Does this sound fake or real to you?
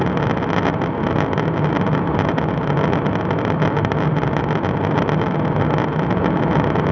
real